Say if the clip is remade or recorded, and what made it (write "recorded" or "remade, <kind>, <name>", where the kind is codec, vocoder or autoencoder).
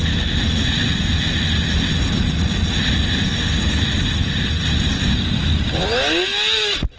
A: recorded